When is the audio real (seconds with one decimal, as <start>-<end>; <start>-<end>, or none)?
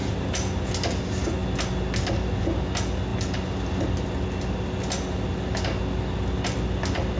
0.7-7.2